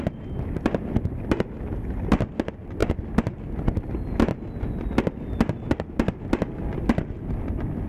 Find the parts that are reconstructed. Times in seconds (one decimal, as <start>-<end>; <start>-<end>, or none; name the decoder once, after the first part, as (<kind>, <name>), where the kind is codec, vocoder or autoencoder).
none